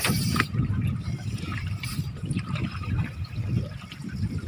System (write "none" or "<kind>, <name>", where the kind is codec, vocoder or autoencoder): vocoder, BigVGAN v2